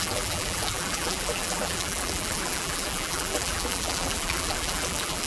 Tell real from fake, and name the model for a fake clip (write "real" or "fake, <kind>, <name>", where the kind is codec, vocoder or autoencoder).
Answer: fake, vocoder, BigVGAN v2